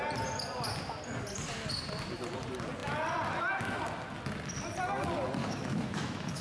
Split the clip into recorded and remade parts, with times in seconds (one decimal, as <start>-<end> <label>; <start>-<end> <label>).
0.0-5.4 recorded; 5.4-6.4 remade